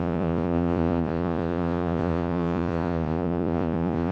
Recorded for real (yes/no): no